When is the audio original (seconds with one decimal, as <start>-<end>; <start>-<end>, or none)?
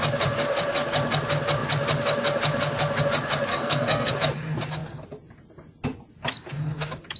0.0-3.5; 4.1-7.2